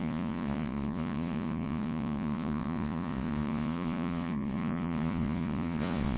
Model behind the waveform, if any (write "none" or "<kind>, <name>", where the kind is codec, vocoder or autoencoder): vocoder, Vocos